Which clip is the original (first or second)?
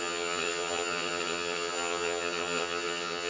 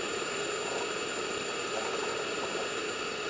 second